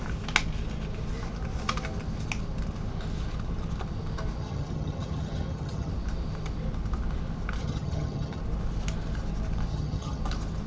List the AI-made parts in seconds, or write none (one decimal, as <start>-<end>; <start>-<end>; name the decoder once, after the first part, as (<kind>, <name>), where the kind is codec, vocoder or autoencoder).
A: 4.4-5.9 (vocoder, HiFi-GAN); 7.6-8.4; 9.7-10.2